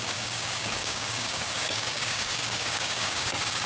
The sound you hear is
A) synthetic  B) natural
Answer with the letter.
A